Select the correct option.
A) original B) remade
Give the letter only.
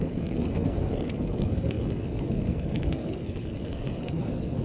B